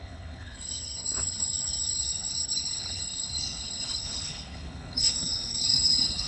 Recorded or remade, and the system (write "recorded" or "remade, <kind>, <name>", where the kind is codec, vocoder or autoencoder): remade, codec, HILCodec